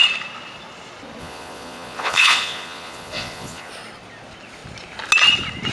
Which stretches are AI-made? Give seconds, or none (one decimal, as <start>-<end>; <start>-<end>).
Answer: 1.2-3.7